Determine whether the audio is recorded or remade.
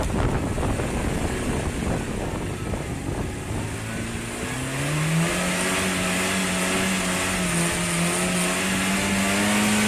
recorded